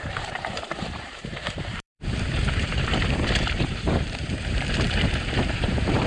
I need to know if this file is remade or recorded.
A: remade